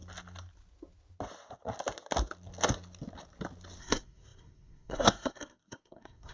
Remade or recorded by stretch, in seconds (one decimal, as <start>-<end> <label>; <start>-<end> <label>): 0.0-3.8 recorded; 3.8-6.3 remade